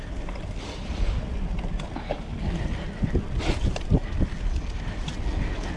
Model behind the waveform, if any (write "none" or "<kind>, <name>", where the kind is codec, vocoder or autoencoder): none